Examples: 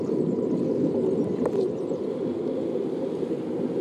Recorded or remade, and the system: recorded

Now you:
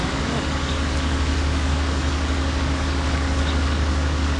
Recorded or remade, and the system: remade, codec, DAC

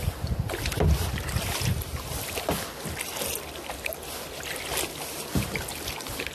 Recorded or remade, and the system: recorded